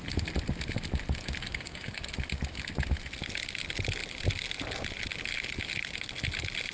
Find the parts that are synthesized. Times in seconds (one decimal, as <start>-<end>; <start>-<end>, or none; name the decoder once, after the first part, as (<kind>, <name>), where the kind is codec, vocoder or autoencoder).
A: 1.5-2.1 (codec, DAC)